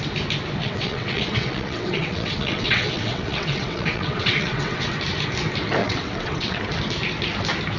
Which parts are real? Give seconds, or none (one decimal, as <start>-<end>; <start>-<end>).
0.0-0.6; 4.9-5.8; 6.6-7.8